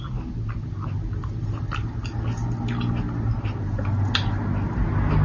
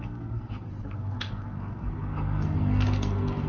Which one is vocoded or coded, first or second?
second